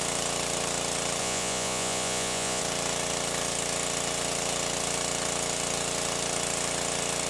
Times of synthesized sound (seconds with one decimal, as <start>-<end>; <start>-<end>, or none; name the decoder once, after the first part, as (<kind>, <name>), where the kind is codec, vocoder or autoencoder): 1.2-2.6 (vocoder, Vocos)